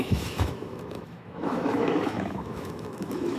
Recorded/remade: remade